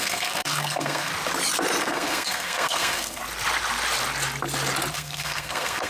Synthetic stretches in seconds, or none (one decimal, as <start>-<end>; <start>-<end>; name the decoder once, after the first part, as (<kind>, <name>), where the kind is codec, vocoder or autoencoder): 0.0-1.1 (codec, SNAC); 1.8-3.2; 4.9-5.9